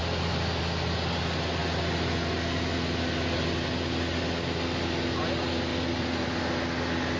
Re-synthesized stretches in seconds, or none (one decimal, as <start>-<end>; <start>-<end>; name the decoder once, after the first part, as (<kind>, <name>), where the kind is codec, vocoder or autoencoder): none